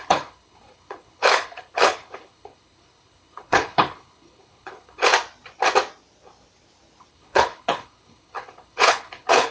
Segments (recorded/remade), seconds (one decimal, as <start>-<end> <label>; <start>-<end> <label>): 0.0-5.1 remade; 5.1-7.1 recorded; 7.1-9.5 remade